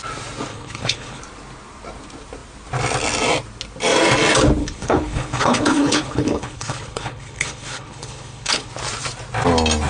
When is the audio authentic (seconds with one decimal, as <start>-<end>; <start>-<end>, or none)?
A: 0.0-0.5; 1.2-4.6; 8.7-9.9